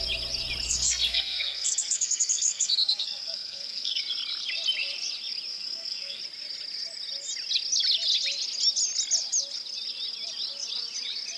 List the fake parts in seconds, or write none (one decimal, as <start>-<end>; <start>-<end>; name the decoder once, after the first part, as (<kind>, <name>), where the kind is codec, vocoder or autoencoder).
0.7-4.0 (codec, SNAC); 5.5-6.2